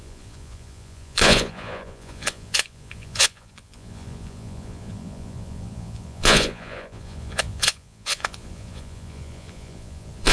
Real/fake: fake